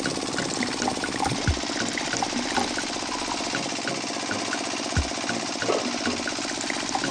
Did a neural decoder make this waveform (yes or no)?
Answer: no